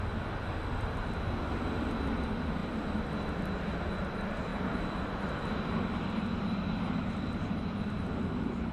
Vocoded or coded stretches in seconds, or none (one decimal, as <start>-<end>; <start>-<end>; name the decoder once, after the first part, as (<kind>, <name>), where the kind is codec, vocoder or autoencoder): 4.5-5.8 (vocoder, BigVGAN v2)